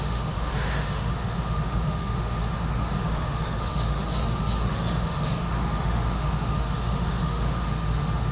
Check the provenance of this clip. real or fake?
fake